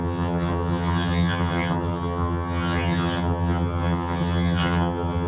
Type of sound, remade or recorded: remade